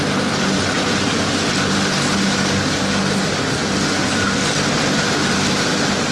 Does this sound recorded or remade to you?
recorded